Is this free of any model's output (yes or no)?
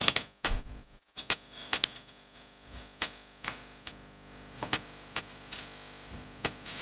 yes